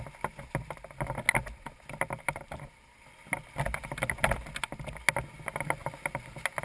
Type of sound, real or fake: real